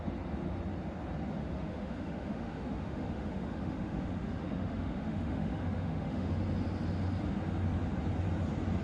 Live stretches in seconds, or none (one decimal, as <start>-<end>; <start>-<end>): 0.0-1.4; 6.3-8.8